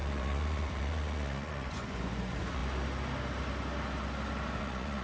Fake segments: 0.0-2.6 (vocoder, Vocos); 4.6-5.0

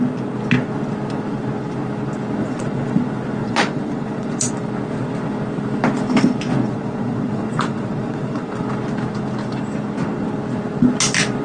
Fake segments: 2.4-3.0 (vocoder, Vocos); 3.4-4.5; 6.6-8.5